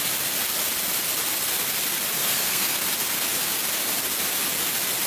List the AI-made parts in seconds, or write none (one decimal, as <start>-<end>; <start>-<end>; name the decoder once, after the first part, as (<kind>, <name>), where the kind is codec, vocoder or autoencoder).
2.2-2.8 (codec, SNAC)

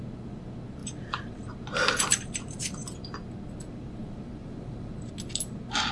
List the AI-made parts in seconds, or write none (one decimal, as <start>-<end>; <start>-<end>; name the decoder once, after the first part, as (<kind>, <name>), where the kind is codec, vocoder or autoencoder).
0.8-1.5 (vocoder, BigVGAN v2); 2.1-3.0; 4.0-5.1

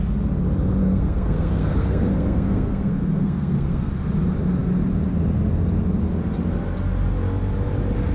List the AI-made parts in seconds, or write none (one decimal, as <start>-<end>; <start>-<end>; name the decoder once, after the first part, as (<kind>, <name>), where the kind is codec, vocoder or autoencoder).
0.8-3.9 (codec, SNAC)

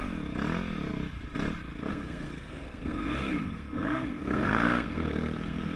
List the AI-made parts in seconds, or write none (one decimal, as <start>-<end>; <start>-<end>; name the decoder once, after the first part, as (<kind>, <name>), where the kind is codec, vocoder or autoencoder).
1.9-5.8 (codec, SNAC)

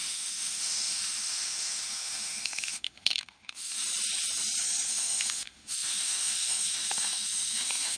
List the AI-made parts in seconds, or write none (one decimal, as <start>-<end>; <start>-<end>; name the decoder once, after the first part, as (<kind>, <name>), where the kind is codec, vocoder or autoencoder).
0.0-3.8 (autoencoder, DAC-VAE); 4.9-8.0

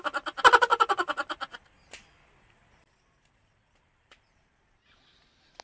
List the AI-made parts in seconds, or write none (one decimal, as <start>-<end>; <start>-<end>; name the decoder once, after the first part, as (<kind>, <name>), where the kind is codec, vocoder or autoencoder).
none